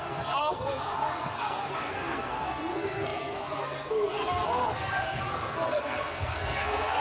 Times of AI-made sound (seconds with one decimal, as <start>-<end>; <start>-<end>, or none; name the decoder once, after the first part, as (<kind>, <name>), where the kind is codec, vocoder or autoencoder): 0.0-7.0 (codec, SNAC)